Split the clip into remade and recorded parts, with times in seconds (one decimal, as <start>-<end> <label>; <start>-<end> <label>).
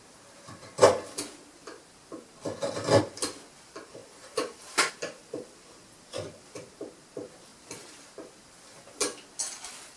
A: 0.0-4.0 recorded; 4.0-4.9 remade; 4.9-7.5 recorded; 7.5-8.1 remade; 8.1-10.0 recorded